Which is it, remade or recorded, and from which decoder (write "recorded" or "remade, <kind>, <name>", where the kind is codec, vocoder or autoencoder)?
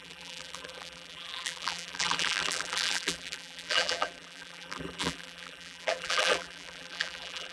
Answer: remade, vocoder, BigVGAN v2